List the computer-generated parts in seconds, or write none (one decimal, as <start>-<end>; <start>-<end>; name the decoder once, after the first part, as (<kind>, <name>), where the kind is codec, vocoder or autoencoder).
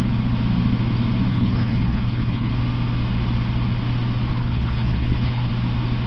1.3-2.5 (codec, HILCodec); 4.3-5.5